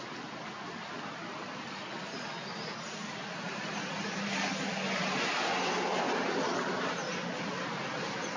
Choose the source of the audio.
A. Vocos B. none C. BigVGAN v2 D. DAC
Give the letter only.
B